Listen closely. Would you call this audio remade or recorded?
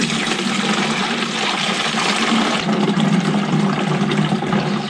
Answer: recorded